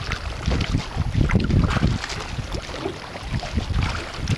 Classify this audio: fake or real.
real